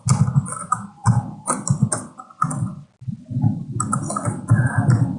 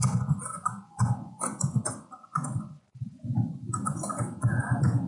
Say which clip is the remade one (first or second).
second